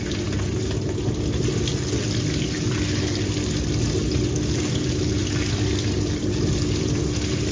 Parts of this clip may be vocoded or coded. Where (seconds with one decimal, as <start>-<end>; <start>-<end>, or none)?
none